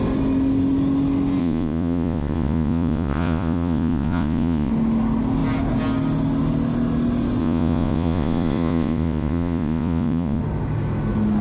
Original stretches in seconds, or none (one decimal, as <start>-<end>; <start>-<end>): 0.0-1.4; 4.7-7.4; 10.4-11.4